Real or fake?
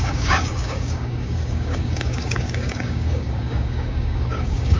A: fake